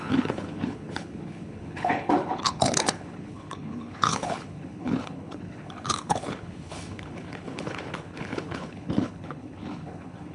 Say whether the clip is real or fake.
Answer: fake